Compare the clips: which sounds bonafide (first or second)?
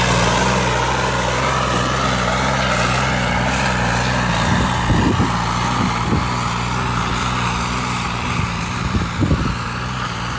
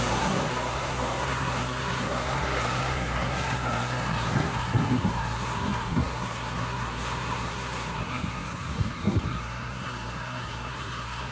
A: first